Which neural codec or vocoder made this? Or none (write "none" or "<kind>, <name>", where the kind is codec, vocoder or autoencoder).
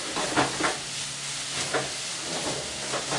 none